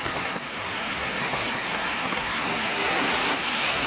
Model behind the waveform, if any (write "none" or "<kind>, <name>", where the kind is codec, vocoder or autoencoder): codec, SNAC